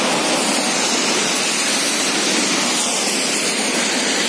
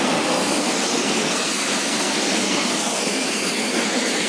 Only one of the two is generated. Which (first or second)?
second